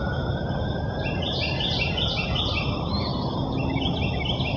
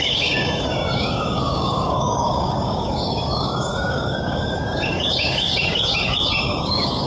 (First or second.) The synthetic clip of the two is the second